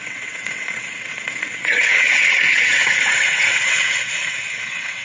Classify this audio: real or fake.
fake